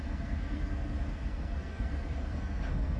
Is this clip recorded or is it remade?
remade